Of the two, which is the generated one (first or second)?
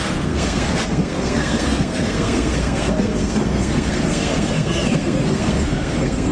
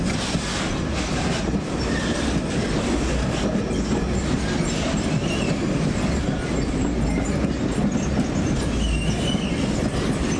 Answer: first